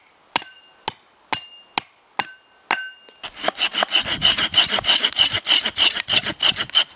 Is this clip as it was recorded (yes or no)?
yes